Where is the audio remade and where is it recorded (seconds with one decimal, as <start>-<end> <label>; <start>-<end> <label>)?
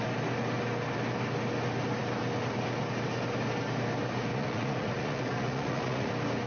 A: 0.0-4.3 recorded; 4.3-6.1 remade; 6.1-6.5 recorded